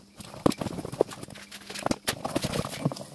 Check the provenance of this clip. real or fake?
real